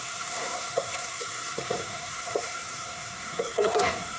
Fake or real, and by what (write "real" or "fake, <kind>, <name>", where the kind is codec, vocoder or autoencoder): fake, codec, SNAC